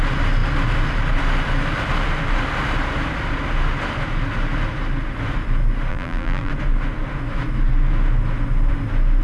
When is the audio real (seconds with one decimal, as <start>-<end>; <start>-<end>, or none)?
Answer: 0.0-5.9; 6.5-9.2